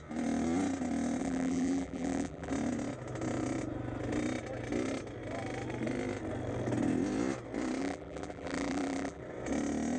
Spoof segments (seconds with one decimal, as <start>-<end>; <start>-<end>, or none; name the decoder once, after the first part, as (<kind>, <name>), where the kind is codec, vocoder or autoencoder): 1.2-2.5 (vocoder, BigVGAN v2); 7.8-9.2